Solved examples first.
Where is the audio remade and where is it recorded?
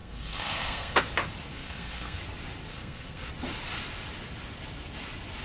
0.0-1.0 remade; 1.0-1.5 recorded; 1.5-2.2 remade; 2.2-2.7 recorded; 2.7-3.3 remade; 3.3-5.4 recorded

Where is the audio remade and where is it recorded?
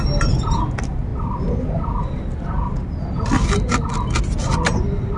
0.0-5.2 recorded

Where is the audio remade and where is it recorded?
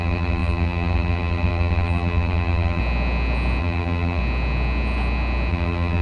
0.0-2.8 remade; 2.8-3.6 recorded; 3.6-4.2 remade; 4.2-5.5 recorded; 5.5-6.0 remade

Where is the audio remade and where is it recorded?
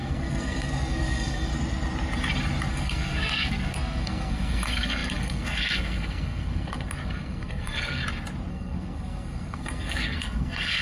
0.0-1.5 remade; 1.5-2.7 recorded; 2.7-8.0 remade; 8.0-8.5 recorded; 8.5-10.8 remade